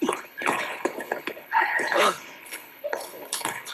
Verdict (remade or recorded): remade